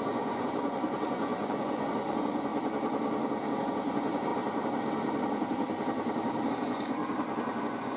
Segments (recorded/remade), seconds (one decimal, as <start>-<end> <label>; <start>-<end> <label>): 0.0-2.5 remade; 2.5-3.6 recorded; 3.6-4.3 remade; 4.3-6.5 recorded; 6.5-7.0 remade; 7.0-7.6 recorded; 7.6-8.0 remade